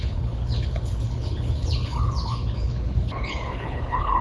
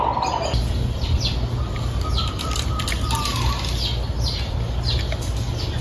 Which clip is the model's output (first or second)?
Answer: first